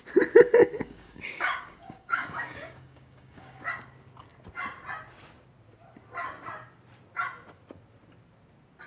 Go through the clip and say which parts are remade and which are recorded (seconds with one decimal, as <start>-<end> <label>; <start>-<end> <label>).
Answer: 0.0-0.6 recorded; 0.6-3.7 remade; 3.7-8.9 recorded